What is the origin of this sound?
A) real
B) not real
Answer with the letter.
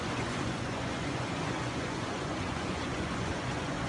B